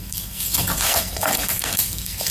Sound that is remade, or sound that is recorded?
remade